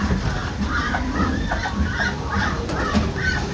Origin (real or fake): fake